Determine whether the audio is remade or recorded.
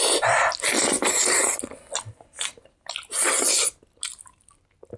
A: recorded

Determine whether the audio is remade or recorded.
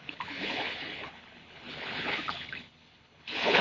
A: remade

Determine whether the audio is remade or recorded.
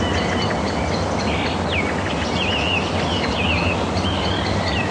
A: recorded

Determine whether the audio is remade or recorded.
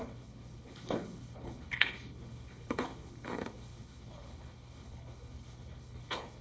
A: remade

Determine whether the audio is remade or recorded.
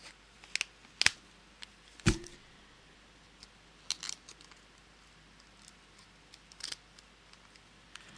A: recorded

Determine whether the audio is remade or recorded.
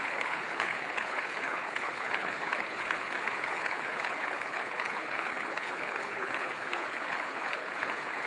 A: remade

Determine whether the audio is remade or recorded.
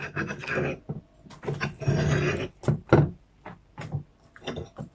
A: recorded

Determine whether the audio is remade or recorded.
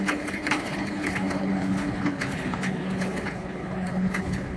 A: remade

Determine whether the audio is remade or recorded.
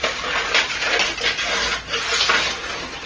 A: recorded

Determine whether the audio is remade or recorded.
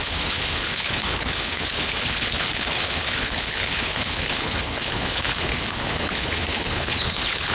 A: remade